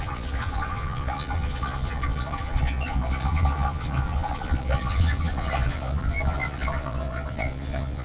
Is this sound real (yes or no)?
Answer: no